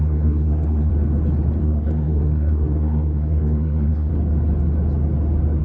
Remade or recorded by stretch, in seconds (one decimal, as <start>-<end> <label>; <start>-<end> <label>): 0.0-0.9 remade; 0.9-1.6 recorded; 1.6-4.1 remade; 4.1-5.6 recorded